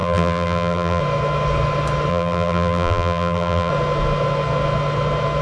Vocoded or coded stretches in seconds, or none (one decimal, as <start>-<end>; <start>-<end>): 0.0-1.0; 2.1-3.7